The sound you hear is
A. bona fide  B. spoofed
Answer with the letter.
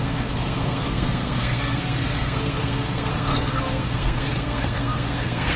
B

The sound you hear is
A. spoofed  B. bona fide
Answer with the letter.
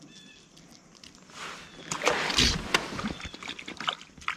B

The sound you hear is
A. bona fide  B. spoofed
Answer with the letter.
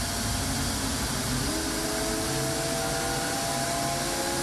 A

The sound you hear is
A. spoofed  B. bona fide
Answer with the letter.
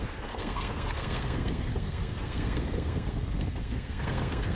A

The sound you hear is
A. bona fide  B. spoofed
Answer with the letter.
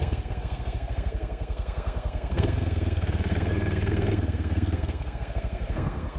B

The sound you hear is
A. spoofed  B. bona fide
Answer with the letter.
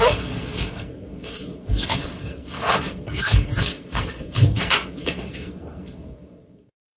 A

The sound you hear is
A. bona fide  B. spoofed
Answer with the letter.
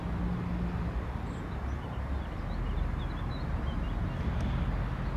A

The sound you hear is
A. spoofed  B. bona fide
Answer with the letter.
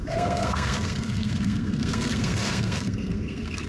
A